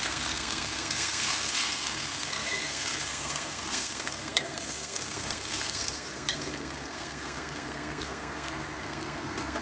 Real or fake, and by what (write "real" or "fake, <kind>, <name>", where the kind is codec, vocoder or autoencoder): fake, codec, SNAC